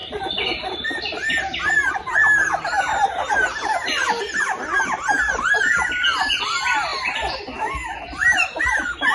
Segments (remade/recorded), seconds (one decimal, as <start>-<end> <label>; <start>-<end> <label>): 0.0-1.4 recorded; 1.4-2.0 remade; 2.0-3.8 recorded; 3.8-9.1 remade